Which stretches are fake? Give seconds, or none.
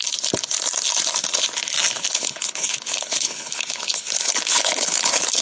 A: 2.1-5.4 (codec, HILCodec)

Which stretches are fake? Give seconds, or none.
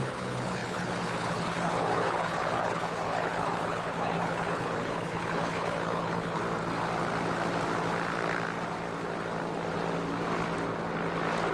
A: 0.0-6.4 (codec, HILCodec)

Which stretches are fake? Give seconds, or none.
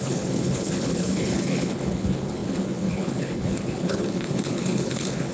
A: 0.0-5.3 (codec, HILCodec)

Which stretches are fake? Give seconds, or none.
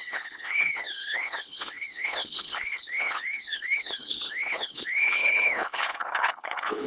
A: 0.0-6.9 (codec, HILCodec)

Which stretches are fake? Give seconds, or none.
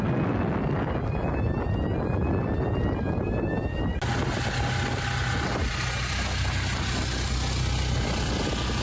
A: none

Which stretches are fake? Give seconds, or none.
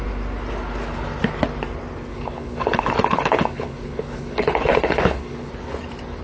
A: 2.1-5.5 (codec, HILCodec)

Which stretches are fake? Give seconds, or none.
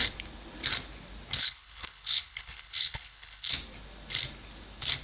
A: 1.4-3.5 (codec, HILCodec)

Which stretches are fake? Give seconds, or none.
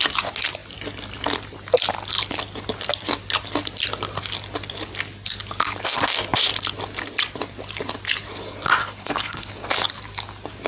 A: 8.8-9.5 (codec, HILCodec)